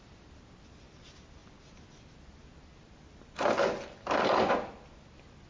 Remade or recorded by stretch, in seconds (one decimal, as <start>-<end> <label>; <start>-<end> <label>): 0.0-5.5 recorded